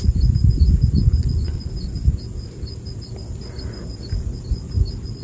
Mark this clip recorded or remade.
recorded